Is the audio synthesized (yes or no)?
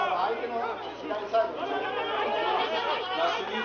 no